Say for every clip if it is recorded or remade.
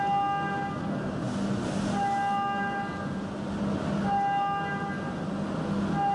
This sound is recorded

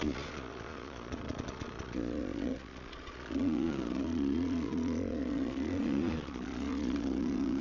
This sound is remade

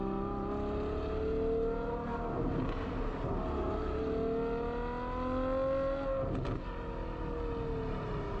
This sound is recorded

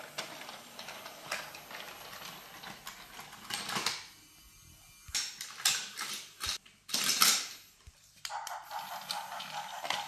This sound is recorded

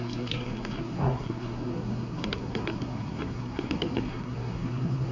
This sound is remade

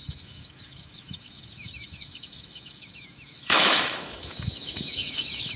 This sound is remade